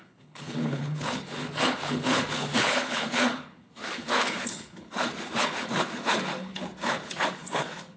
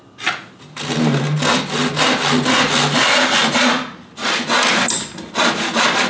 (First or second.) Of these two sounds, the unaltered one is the second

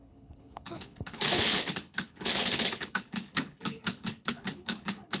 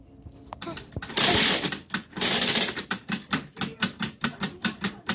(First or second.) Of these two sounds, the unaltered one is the second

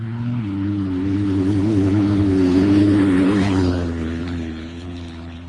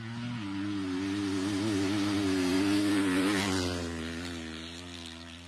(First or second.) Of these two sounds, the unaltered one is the second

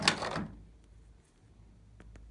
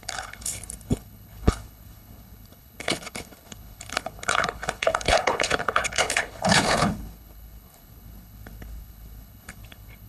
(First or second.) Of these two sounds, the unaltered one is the first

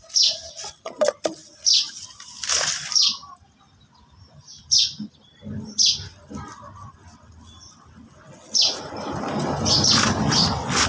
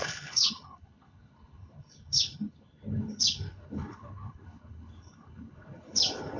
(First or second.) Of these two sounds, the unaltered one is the first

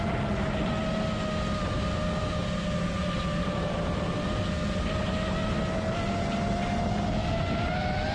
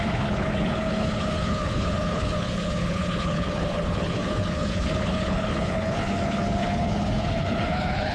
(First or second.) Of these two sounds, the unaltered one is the first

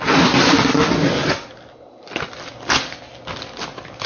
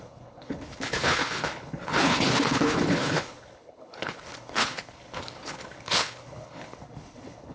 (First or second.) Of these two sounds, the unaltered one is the first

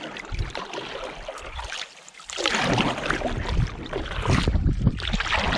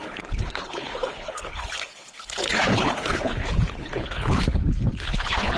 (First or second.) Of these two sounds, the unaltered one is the first